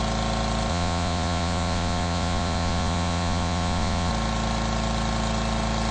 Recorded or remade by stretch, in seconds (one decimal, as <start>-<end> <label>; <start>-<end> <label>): 0.0-0.7 recorded; 0.7-4.1 remade; 4.1-5.9 recorded